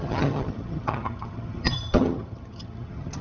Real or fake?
fake